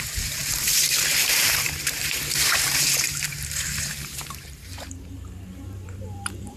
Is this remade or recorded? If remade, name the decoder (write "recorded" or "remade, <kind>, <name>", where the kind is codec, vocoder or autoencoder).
remade, vocoder, BigVGAN v2